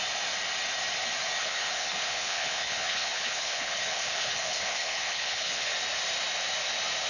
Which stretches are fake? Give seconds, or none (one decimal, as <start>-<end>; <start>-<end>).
1.4-5.7